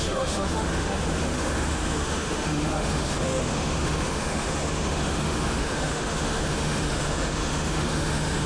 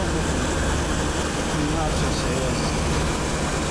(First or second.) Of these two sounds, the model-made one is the first